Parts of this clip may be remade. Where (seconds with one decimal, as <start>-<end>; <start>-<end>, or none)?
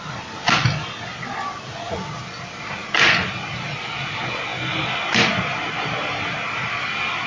none